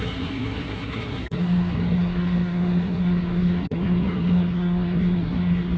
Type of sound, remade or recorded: remade